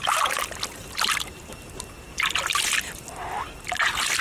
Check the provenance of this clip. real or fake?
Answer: real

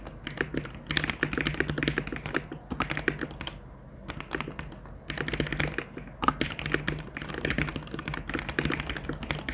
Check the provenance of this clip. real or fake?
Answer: real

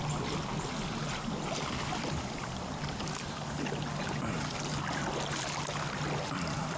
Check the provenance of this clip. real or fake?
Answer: real